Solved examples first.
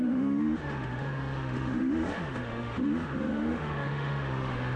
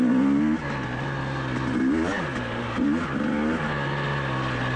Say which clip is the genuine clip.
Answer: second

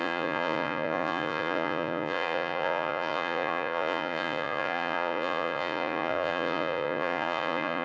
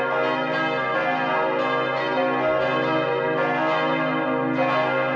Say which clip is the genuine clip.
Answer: second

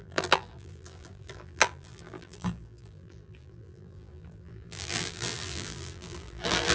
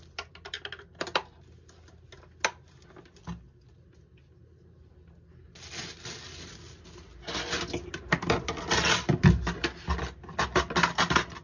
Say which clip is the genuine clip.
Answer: second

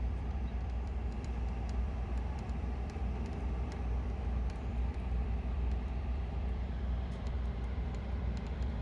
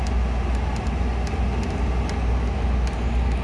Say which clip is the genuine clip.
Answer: second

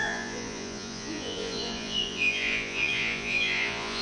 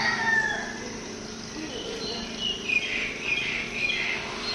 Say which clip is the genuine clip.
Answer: second